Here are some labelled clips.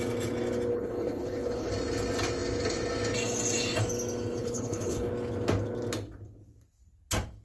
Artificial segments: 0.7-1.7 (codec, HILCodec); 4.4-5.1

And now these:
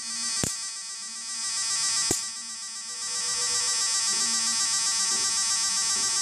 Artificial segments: none

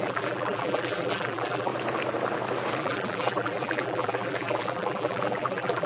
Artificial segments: 0.0-1.7 (vocoder, BigVGAN v2); 2.8-5.9

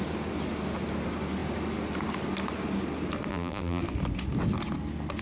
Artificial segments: 3.3-3.8 (vocoder, BigVGAN v2)

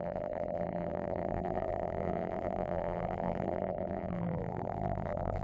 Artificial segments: 0.0-5.4 (vocoder, BigVGAN v2)

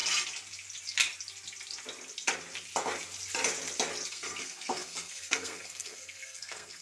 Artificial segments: 4.1-6.8 (codec, SNAC)